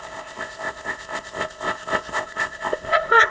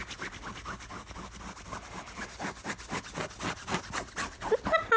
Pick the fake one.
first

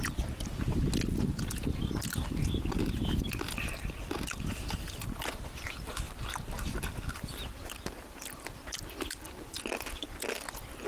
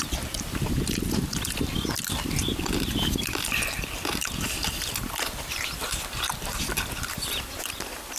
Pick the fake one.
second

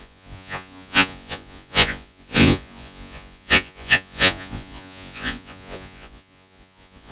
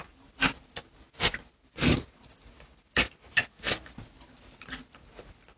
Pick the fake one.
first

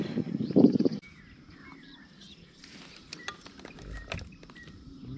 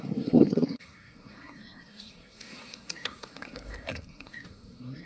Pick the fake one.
second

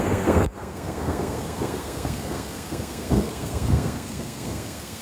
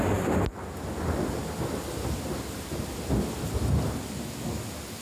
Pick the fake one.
first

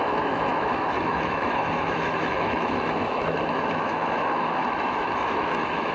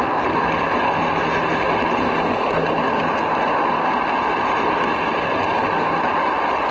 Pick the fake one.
first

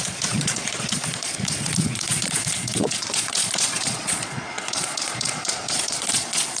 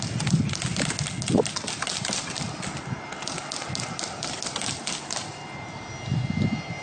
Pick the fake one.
first